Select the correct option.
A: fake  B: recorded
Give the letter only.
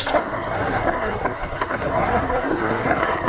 A